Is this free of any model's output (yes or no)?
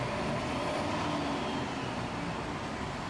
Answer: yes